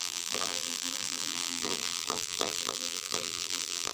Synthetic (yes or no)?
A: yes